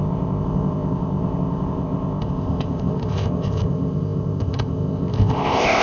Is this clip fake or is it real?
fake